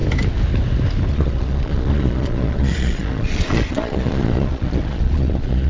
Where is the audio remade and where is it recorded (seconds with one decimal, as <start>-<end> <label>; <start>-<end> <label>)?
0.0-1.1 recorded; 1.1-5.7 remade